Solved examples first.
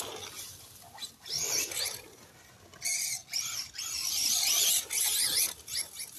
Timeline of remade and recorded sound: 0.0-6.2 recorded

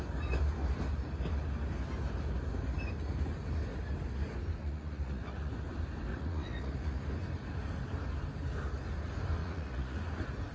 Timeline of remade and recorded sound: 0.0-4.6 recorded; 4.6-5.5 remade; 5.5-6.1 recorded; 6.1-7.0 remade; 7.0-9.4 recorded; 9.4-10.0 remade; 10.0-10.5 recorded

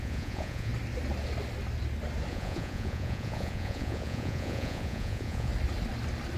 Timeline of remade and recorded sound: 0.0-0.7 remade; 0.7-2.3 recorded; 2.3-5.5 remade; 5.5-6.4 recorded

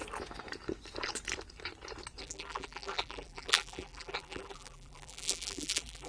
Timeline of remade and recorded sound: 0.0-2.2 recorded; 2.2-6.1 remade

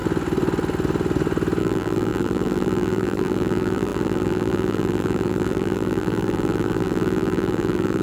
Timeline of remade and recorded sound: 0.0-1.6 recorded; 1.6-8.0 remade

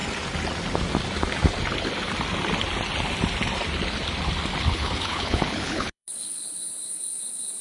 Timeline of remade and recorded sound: 0.0-4.6 recorded; 4.6-7.6 remade

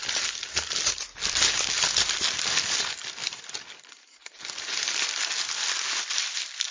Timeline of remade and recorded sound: 0.0-6.7 recorded